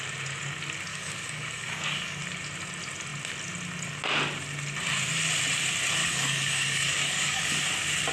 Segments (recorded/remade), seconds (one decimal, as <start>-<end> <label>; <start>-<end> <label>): 0.0-0.9 recorded; 0.9-2.2 remade; 2.2-6.0 recorded; 6.0-7.4 remade; 7.4-8.1 recorded